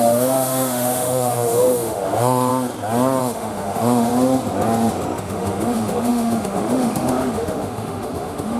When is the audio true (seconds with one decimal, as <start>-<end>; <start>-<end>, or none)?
2.5-3.2; 4.1-5.2